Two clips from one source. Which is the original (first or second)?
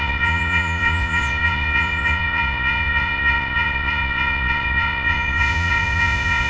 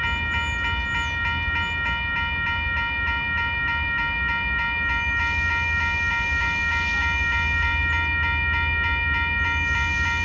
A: second